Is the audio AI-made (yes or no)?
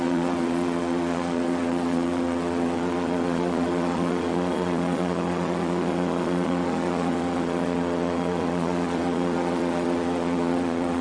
yes